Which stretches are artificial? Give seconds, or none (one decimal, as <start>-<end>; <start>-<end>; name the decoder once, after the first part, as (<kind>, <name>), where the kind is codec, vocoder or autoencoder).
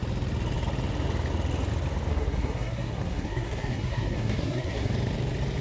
2.1-4.9 (codec, SNAC)